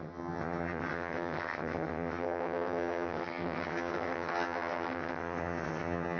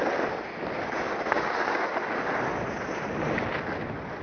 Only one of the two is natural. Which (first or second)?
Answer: second